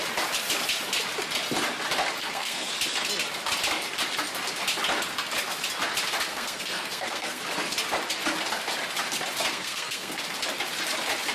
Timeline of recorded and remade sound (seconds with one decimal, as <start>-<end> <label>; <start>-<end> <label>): 0.0-2.2 recorded; 2.2-2.7 remade; 2.7-6.3 recorded; 6.3-7.4 remade; 7.4-9.5 recorded; 9.5-10.2 remade; 10.2-11.3 recorded